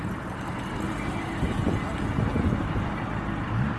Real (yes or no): yes